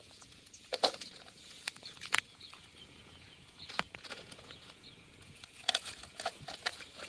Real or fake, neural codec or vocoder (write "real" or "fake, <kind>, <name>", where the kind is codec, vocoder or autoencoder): fake, vocoder, Vocos